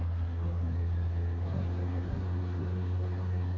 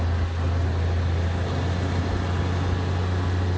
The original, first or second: second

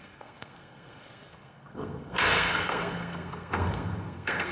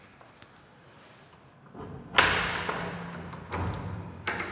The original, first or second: second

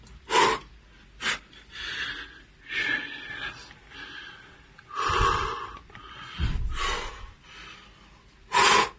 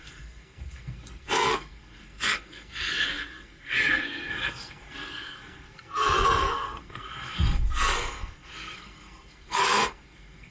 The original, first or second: first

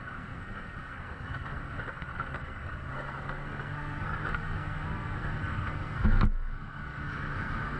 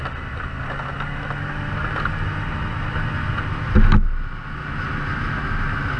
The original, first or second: second